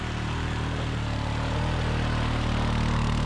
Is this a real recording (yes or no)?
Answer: yes